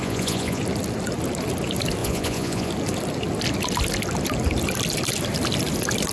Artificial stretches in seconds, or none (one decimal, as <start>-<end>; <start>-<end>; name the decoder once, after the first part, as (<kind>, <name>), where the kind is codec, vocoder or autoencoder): 0.0-0.6 (vocoder, Vocos); 2.0-2.7